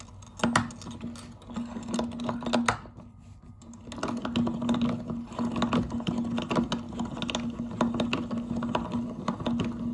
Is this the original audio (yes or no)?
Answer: yes